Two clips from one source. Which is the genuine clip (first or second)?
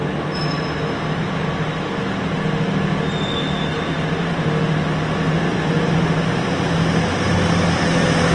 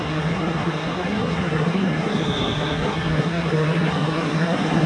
first